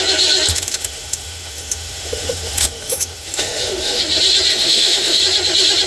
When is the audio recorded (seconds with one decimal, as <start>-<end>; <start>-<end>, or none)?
0.0-0.5; 4.0-4.5; 5.2-5.9